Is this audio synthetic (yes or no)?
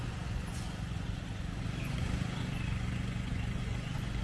yes